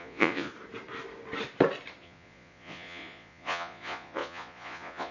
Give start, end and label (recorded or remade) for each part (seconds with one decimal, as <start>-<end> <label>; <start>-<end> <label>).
0.0-0.5 remade; 0.5-2.0 recorded; 2.0-5.1 remade